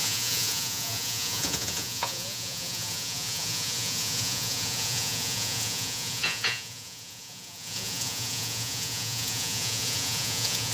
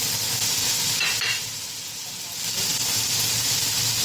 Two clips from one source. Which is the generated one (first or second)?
first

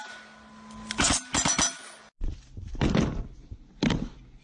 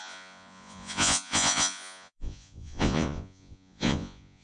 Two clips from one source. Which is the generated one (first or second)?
second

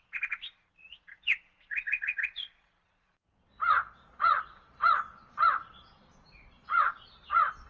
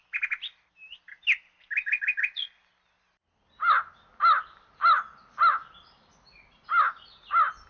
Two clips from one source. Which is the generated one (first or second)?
first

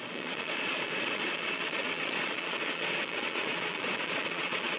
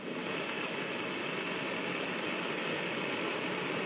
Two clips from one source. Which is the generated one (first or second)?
first